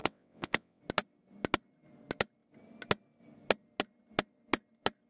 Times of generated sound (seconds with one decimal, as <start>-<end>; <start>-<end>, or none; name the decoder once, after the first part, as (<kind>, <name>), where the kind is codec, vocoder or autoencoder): 0.0-0.8 (vocoder, WaveNeXt)